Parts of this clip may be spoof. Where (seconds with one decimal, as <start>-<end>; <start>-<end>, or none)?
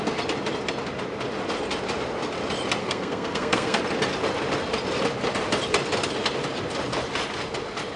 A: 2.8-3.8